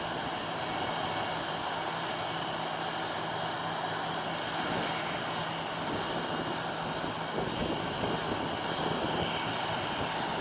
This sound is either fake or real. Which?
real